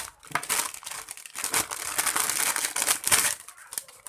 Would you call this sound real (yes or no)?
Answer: yes